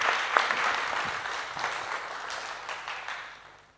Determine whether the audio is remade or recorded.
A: recorded